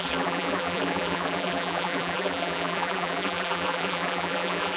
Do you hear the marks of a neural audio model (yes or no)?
yes